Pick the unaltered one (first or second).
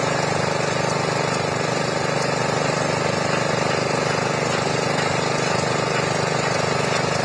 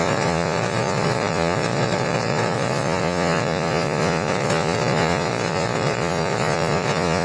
first